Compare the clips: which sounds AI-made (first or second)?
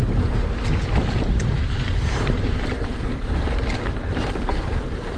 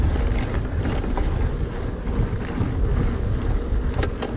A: first